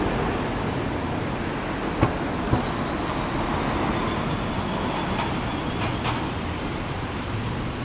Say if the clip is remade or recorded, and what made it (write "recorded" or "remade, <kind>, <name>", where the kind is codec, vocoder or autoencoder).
recorded